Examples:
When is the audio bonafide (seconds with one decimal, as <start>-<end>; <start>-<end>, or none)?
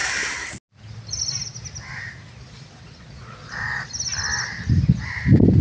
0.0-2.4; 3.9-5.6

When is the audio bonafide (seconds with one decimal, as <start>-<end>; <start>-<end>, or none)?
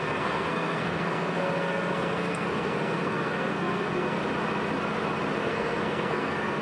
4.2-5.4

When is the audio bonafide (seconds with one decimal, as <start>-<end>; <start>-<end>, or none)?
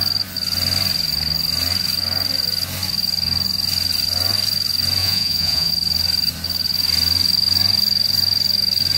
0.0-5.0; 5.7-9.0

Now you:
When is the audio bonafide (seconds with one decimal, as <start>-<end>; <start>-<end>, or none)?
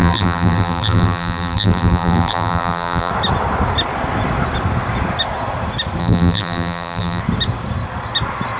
3.1-6.0; 7.2-8.6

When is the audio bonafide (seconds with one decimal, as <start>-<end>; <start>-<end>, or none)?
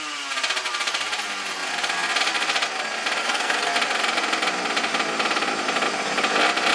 0.0-3.2; 3.7-6.7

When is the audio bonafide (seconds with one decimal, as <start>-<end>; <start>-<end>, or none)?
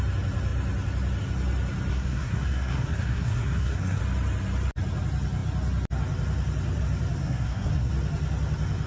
0.0-1.9; 4.0-7.2; 7.9-8.9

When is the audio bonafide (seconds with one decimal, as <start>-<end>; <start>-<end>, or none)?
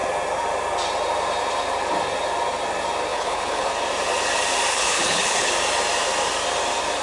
0.0-3.1; 3.7-4.7; 5.5-7.0